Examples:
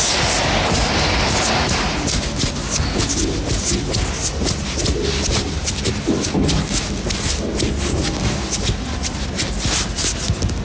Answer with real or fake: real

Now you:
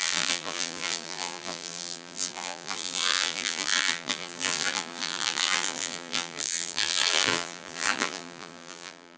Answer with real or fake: fake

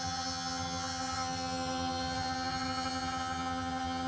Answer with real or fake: fake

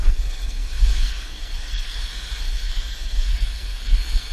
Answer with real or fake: fake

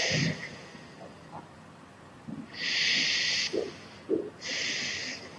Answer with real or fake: fake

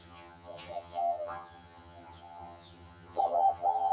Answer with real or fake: fake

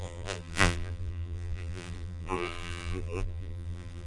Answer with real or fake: fake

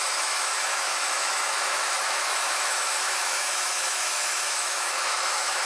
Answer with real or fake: fake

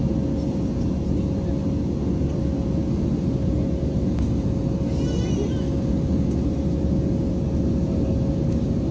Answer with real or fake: real